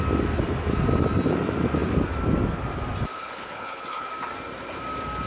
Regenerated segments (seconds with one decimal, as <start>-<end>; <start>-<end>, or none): 3.1-4.1